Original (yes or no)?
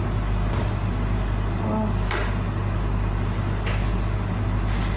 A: yes